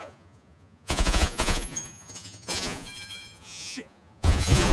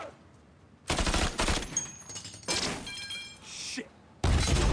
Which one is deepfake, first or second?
first